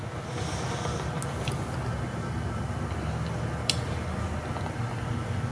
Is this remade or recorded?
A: recorded